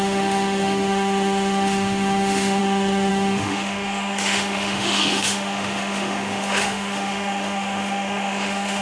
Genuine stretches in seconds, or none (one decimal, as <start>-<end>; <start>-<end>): none